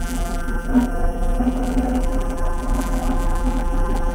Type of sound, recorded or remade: remade